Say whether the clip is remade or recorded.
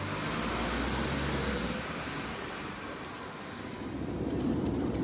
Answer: recorded